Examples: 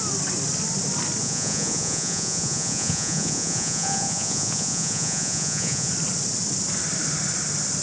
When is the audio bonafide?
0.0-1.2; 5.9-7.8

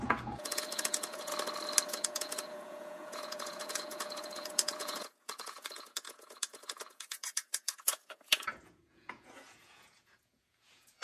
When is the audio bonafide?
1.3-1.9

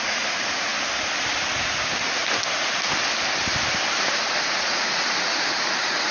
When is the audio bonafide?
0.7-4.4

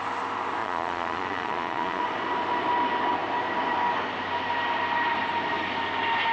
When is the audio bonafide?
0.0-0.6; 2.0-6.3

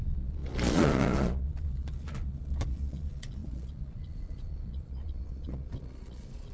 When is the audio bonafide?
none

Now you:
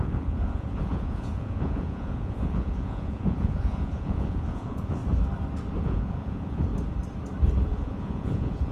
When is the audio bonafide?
5.0-5.8; 6.7-7.7

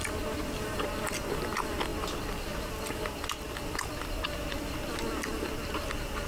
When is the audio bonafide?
0.0-6.3

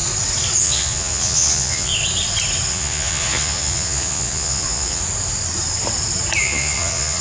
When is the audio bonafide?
0.0-0.6; 1.9-2.7; 5.0-6.4